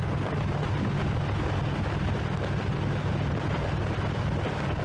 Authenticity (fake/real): real